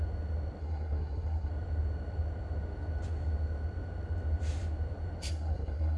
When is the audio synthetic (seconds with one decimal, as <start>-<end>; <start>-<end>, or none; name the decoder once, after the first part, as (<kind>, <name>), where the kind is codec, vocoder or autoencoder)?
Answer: 0.6-1.5 (codec, SNAC); 5.2-6.0